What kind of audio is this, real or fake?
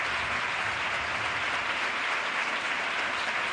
real